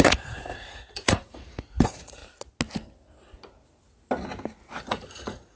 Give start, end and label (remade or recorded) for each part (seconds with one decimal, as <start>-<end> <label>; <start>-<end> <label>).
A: 0.0-2.2 remade; 2.2-4.9 recorded; 4.9-5.6 remade